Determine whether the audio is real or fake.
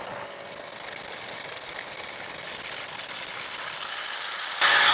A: real